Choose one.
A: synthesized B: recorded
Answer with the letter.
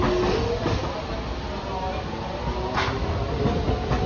B